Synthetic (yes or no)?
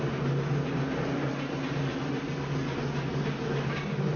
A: no